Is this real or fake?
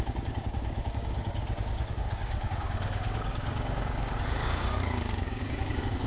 fake